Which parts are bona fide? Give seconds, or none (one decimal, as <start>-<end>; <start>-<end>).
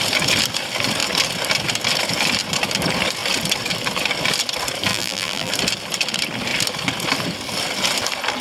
0.0-4.9; 5.5-8.4